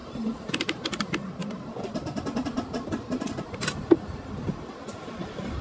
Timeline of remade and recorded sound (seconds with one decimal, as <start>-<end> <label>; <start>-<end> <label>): 0.0-0.6 remade; 0.6-5.6 recorded